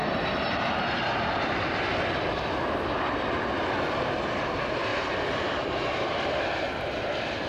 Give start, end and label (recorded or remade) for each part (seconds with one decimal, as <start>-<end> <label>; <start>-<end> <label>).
0.0-0.9 remade; 0.9-4.9 recorded; 4.9-6.4 remade; 6.4-7.5 recorded